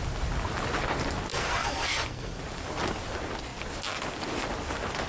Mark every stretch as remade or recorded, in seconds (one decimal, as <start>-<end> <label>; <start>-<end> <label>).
0.0-1.3 recorded; 1.3-2.4 remade; 2.4-5.1 recorded